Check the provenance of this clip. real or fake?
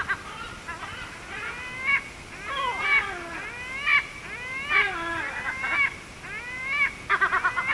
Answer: real